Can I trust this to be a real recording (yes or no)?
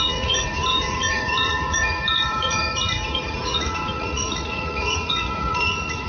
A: no